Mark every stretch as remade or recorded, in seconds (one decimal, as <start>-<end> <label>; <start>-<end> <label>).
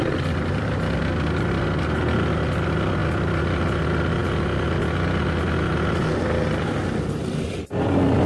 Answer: 0.0-8.3 recorded